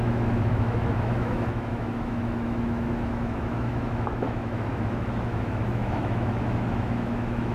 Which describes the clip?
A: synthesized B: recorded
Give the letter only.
A